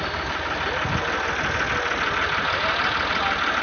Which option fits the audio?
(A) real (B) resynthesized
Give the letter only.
A